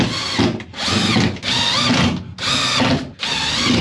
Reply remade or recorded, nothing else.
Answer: recorded